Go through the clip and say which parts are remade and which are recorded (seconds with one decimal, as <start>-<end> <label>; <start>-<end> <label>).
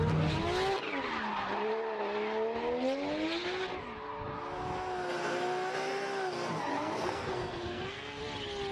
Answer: 0.0-6.7 recorded; 6.7-8.2 remade; 8.2-8.7 recorded